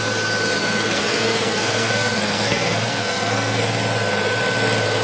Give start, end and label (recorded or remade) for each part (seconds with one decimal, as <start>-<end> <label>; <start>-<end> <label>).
0.0-0.6 recorded; 0.6-3.6 remade; 3.6-5.0 recorded